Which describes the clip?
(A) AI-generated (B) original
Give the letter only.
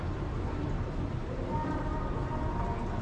B